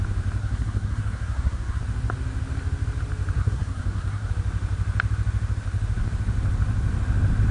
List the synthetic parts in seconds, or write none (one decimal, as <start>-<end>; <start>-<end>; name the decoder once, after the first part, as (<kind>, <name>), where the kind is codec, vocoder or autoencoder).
0.4-1.8 (codec, SNAC); 3.4-4.3